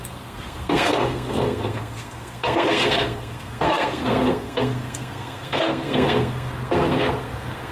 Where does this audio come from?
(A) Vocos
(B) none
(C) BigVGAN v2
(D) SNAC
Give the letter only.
D